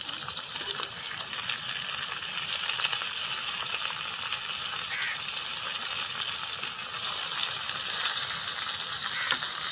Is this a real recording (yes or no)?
yes